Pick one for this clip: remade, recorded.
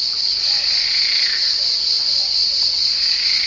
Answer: recorded